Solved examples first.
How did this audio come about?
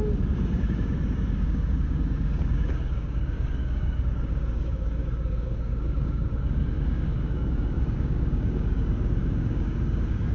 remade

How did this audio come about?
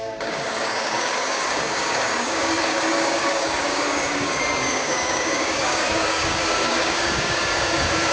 remade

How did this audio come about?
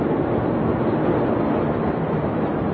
recorded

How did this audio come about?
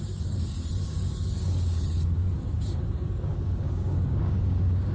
remade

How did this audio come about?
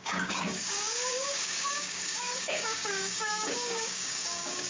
remade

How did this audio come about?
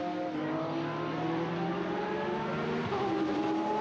recorded